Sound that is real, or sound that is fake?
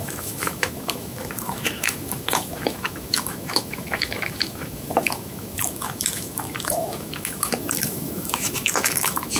fake